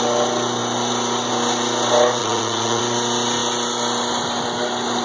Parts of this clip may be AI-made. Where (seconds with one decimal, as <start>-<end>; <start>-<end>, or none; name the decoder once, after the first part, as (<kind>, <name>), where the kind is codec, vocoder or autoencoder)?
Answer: 2.2-2.8 (vocoder, Vocos)